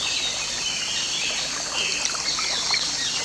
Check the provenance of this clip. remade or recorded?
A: remade